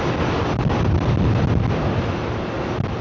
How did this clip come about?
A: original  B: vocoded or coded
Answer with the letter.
A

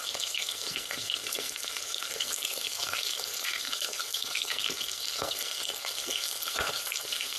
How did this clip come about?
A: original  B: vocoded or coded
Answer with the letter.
B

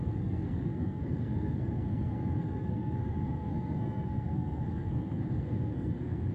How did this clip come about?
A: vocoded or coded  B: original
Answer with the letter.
A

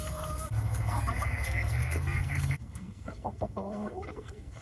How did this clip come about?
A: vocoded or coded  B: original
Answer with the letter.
A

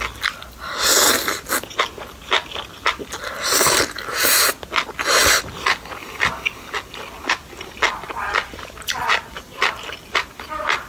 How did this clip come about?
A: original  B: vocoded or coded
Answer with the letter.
A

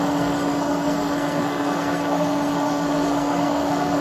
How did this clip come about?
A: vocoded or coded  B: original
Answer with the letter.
A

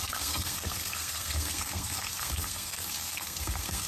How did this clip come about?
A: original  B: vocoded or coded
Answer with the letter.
B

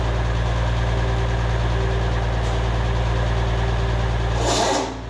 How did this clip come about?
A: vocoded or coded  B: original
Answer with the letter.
B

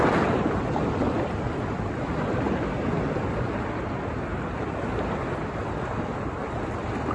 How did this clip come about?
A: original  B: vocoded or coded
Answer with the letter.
A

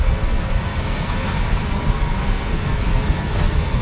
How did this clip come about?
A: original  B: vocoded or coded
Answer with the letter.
B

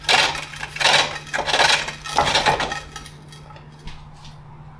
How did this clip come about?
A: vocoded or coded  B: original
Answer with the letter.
B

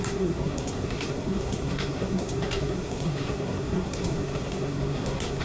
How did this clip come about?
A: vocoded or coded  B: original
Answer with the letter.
A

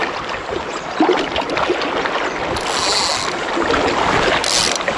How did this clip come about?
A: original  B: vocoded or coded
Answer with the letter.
A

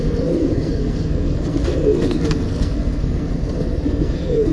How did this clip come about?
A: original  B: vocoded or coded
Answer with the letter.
B